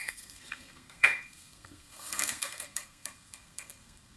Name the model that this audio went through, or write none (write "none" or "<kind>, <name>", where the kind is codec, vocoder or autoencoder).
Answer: codec, SNAC